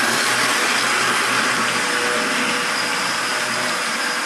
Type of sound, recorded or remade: recorded